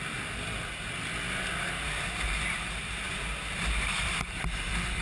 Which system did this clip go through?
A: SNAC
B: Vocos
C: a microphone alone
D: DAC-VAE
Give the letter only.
C